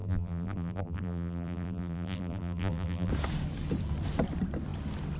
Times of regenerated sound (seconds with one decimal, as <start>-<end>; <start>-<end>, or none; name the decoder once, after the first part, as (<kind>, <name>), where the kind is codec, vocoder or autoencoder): 0.0-3.1 (vocoder, BigVGAN v2)